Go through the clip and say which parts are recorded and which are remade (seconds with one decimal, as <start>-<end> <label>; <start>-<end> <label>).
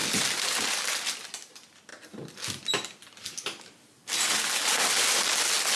0.0-1.3 remade; 1.3-5.8 recorded